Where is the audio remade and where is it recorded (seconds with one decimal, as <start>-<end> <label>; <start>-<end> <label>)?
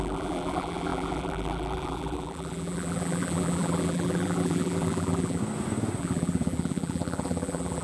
0.0-5.4 remade; 5.4-6.0 recorded; 6.0-7.8 remade